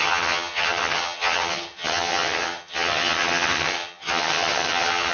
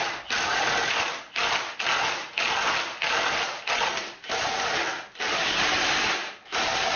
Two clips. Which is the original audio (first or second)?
second